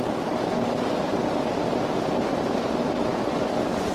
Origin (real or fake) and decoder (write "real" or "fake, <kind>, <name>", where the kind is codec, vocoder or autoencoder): fake, vocoder, BigVGAN v2